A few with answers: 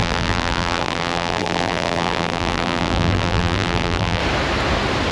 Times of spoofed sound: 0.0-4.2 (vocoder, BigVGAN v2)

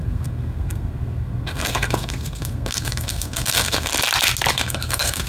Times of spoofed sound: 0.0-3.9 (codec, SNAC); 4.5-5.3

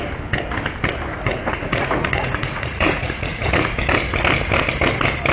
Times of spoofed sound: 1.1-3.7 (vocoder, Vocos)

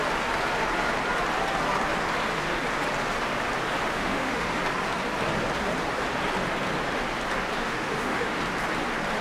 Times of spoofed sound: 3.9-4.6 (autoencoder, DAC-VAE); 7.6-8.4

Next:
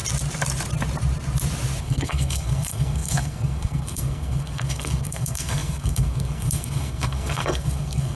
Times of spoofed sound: 1.8-8.1 (codec, SNAC)

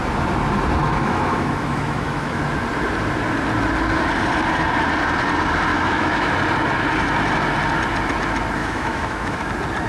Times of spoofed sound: 0.8-2.4 (autoencoder, DAC-VAE); 5.7-6.3; 8.6-9.5

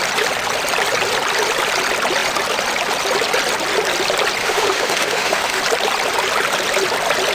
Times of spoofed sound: 4.4-5.6 (autoencoder, DAC-VAE)

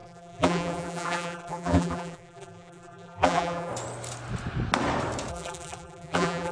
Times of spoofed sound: 0.0-3.7 (vocoder, BigVGAN v2); 5.3-6.5